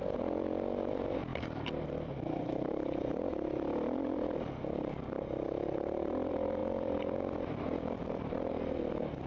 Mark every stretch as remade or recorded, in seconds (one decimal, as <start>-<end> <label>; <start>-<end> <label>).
0.0-1.3 recorded; 1.3-5.1 remade; 5.1-6.6 recorded; 6.6-8.9 remade; 8.9-9.3 recorded